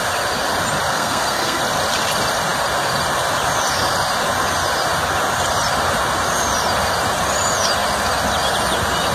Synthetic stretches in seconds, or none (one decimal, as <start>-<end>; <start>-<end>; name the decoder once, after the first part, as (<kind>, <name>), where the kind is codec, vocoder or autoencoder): 0.9-1.6 (codec, SNAC)